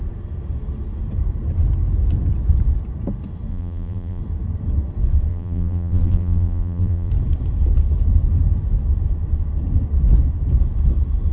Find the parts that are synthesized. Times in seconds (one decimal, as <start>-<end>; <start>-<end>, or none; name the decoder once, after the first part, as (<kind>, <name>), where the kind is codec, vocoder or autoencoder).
3.5-4.2 (vocoder, BigVGAN v2); 5.3-7.1